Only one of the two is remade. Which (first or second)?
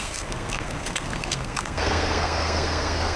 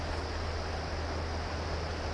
first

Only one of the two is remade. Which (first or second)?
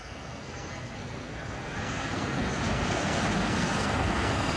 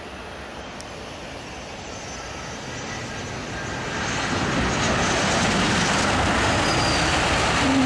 first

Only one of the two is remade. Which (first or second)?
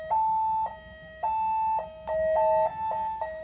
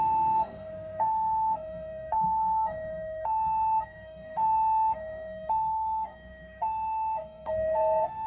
second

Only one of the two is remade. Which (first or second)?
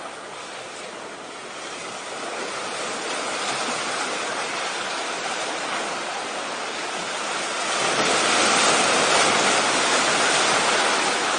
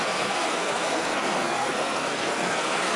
second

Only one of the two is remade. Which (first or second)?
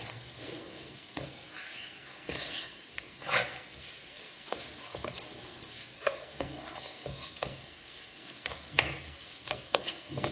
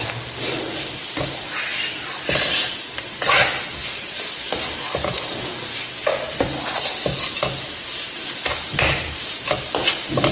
first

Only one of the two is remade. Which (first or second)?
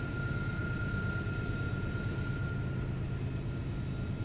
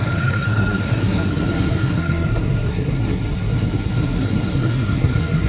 second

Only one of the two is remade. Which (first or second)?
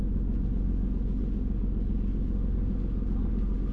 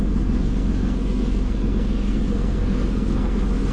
second